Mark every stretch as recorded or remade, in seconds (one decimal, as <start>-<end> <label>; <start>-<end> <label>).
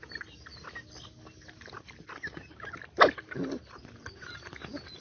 0.0-5.0 recorded